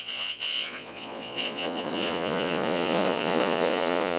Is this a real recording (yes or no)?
no